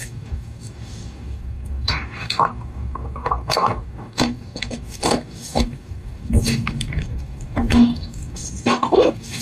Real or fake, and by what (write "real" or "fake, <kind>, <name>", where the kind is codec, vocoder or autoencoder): fake, codec, DAC